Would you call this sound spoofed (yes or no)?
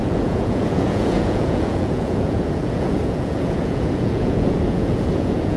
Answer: yes